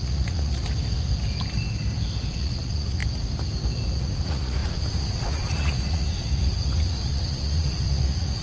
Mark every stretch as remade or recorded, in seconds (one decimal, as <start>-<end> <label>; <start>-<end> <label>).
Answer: 0.0-0.6 remade; 0.6-2.3 recorded; 2.3-3.0 remade; 3.0-4.0 recorded; 4.0-8.4 remade